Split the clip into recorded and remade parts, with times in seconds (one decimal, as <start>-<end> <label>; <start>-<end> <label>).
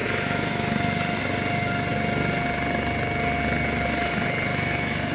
0.0-0.8 remade; 0.8-4.5 recorded; 4.5-5.1 remade